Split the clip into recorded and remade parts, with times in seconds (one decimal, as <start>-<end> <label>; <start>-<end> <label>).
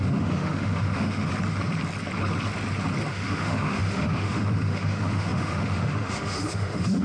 0.0-1.3 remade; 1.3-3.1 recorded; 3.1-7.0 remade